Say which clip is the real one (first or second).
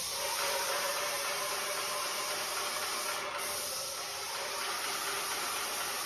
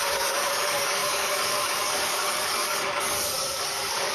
first